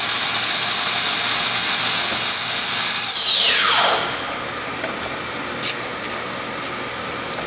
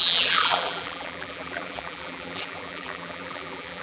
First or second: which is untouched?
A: first